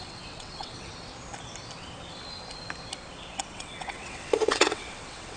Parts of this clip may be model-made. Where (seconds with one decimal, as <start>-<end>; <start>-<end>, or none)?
0.0-0.9; 3.3-5.4